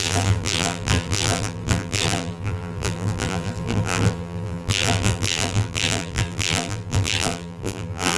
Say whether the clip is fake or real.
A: fake